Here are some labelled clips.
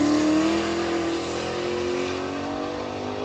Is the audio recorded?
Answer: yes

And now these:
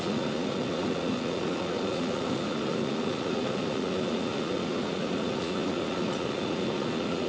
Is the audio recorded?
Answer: no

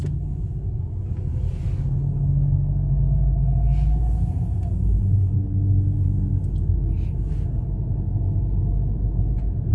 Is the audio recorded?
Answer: yes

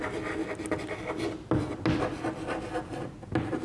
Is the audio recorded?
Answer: yes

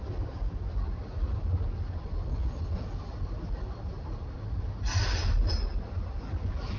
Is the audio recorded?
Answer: yes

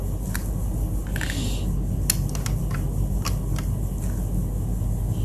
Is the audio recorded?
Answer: yes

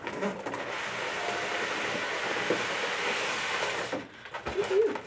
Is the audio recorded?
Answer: yes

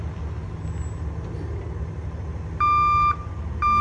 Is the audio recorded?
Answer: yes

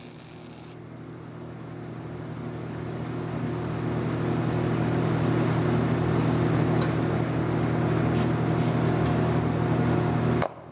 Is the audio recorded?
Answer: yes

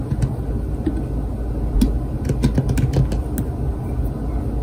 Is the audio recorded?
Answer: yes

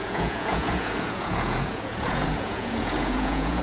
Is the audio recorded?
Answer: no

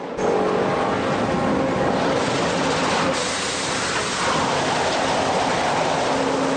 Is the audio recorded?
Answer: yes